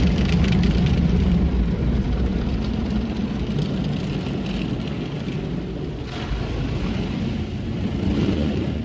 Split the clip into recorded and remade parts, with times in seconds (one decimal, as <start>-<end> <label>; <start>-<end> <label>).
0.0-8.2 recorded; 8.2-8.8 remade